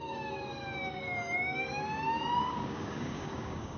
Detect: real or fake fake